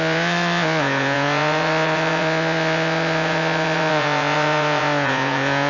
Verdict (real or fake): fake